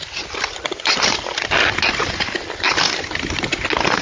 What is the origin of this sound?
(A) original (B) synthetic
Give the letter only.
A